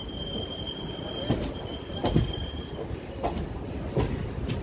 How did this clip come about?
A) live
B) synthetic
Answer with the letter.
A